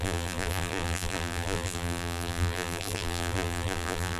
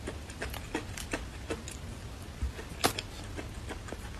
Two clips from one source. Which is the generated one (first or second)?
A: first